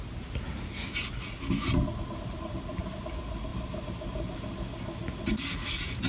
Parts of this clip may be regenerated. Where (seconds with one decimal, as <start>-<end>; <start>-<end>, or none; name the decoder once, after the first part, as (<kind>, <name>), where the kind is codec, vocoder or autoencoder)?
none